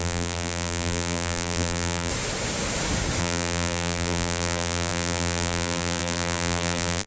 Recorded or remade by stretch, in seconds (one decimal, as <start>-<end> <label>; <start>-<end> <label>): 0.0-2.1 remade; 2.1-3.2 recorded; 3.2-7.1 remade